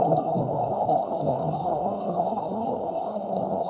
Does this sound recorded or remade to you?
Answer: remade